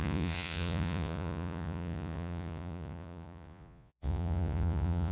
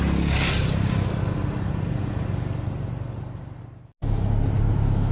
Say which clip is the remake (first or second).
first